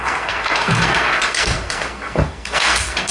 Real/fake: fake